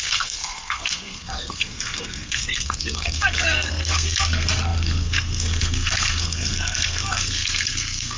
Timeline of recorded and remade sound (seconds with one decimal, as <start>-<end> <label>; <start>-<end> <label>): 0.0-8.2 remade